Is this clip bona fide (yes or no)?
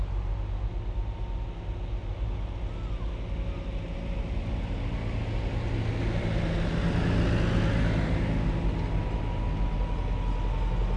yes